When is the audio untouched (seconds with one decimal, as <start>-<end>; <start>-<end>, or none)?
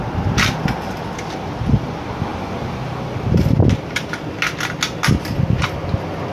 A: 0.0-6.3